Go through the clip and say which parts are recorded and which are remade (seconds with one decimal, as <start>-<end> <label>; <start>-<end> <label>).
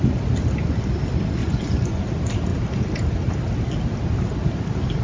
0.0-1.4 recorded; 1.4-2.0 remade; 2.0-5.0 recorded